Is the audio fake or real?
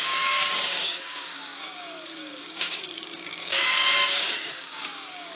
fake